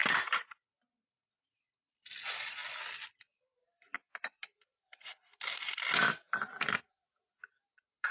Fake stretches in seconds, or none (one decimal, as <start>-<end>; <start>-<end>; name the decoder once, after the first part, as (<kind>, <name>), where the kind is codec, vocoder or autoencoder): 0.0-2.6 (vocoder, BigVGAN v2); 3.3-3.9; 7.6-8.1